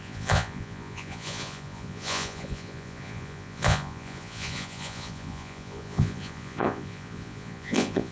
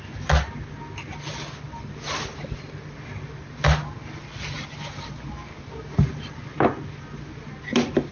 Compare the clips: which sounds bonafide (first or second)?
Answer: second